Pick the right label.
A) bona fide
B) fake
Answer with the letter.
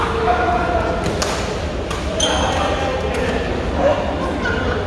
A